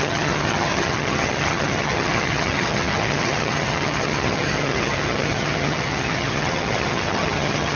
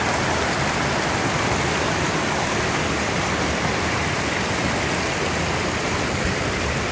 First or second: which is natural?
second